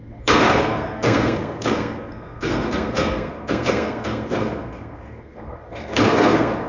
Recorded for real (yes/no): no